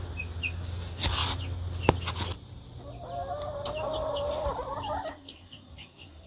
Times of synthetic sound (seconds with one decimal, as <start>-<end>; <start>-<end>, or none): 5.1-6.3